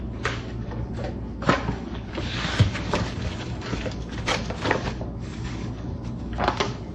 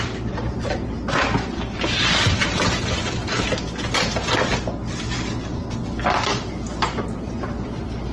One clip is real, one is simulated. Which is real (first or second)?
second